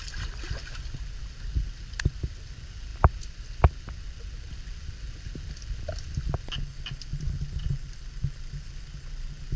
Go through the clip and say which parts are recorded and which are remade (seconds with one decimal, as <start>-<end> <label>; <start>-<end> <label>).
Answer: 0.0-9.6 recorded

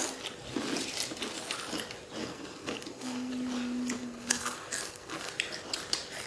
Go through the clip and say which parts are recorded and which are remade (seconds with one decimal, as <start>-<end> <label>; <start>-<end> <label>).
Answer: 0.0-2.2 recorded; 2.2-3.3 remade; 3.3-4.0 recorded; 4.0-5.3 remade; 5.3-6.3 recorded

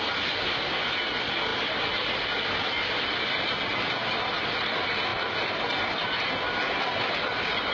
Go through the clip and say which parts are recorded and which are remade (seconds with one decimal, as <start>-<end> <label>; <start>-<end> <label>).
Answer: 0.0-7.7 recorded

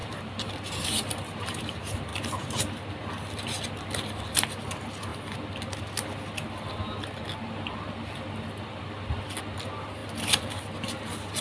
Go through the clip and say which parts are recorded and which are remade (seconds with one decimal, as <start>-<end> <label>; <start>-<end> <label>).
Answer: 0.0-1.7 remade; 1.7-11.4 recorded

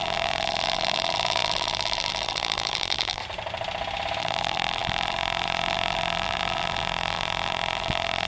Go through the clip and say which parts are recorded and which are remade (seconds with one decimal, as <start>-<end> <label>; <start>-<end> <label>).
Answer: 0.0-3.2 remade; 3.2-4.2 recorded; 4.2-8.3 remade